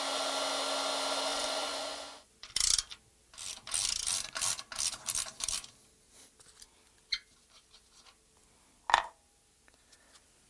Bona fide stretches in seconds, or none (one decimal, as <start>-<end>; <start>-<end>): 0.0-1.3; 2.5-10.5